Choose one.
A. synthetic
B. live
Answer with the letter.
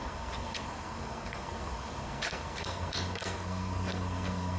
A